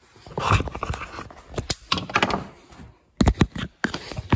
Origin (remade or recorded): recorded